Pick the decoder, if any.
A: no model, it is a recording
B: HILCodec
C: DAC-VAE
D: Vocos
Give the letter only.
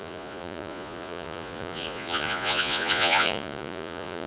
D